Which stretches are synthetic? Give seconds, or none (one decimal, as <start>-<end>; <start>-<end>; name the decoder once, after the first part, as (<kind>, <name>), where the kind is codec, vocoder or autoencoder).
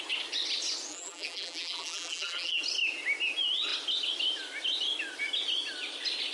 0.9-2.6 (vocoder, BigVGAN v2)